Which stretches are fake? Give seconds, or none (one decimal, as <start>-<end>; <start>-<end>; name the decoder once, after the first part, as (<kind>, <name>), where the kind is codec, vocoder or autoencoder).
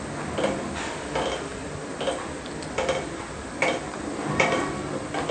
none